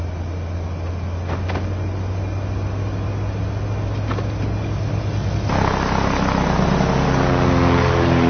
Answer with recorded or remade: recorded